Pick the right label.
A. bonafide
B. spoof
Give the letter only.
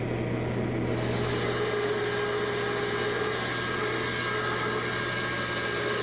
A